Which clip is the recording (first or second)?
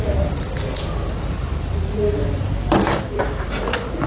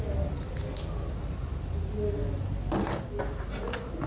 second